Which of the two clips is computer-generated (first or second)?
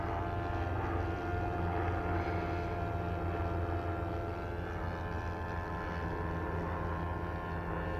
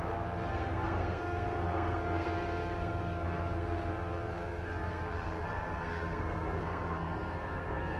second